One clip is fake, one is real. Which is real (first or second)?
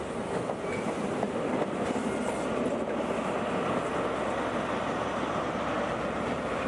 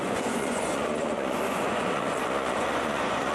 first